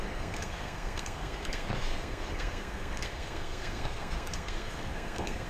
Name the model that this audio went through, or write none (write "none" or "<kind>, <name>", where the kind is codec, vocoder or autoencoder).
codec, SNAC